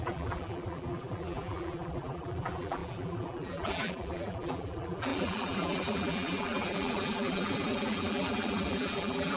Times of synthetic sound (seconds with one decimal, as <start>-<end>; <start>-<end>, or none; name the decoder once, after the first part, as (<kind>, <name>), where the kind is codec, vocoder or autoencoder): 0.0-9.4 (vocoder, BigVGAN v2)